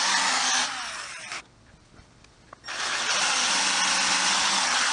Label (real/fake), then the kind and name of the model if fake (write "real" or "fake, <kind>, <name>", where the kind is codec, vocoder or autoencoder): real